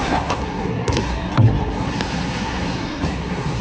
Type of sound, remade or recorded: remade